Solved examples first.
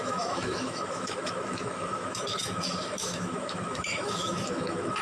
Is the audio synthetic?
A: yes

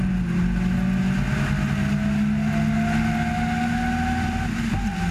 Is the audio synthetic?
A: no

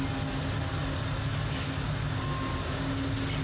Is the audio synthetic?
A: no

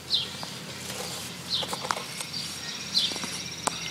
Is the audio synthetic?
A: no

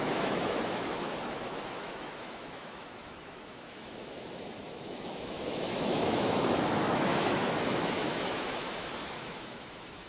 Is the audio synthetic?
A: yes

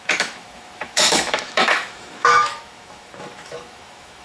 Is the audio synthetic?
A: yes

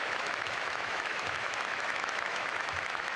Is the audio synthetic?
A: yes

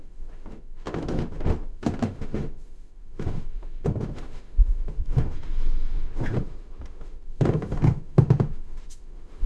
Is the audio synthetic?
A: yes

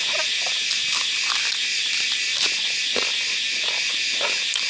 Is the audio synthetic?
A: no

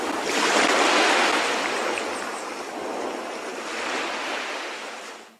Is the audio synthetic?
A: no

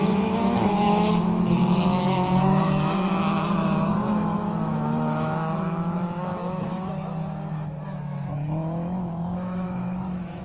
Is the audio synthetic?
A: yes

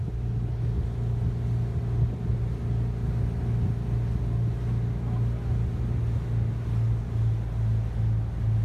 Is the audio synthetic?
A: no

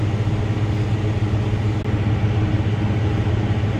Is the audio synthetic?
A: no